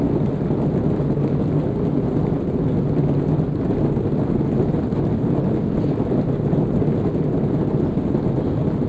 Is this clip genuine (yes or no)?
yes